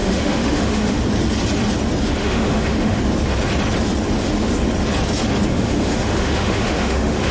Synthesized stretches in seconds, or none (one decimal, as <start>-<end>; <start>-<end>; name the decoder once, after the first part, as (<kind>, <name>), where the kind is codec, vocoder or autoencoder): 0.0-1.0 (autoencoder, DAC-VAE); 2.2-3.0; 5.5-7.3